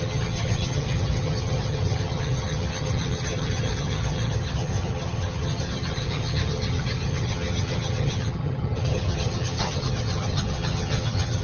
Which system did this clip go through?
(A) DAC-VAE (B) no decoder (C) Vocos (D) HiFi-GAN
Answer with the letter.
D